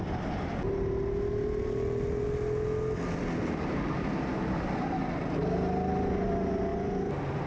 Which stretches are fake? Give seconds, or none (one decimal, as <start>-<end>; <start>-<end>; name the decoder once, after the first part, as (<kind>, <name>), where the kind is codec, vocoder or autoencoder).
none